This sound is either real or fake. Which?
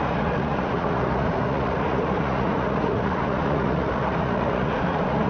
fake